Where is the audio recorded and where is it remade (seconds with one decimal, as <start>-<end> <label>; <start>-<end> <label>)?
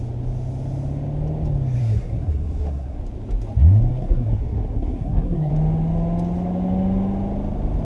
0.0-1.8 recorded; 1.8-3.0 remade; 3.0-3.9 recorded; 3.9-5.5 remade; 5.5-7.8 recorded